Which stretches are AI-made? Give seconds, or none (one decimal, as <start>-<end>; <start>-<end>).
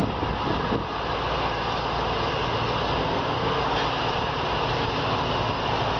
3.0-3.6